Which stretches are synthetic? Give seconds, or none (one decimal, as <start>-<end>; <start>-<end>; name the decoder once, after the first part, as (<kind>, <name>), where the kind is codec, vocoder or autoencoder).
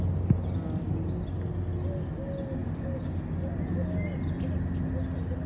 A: none